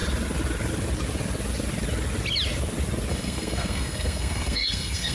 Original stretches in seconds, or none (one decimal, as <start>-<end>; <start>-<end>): 0.0-3.1